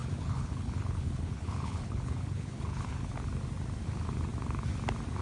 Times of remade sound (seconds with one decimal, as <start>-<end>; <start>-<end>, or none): 0.0-3.1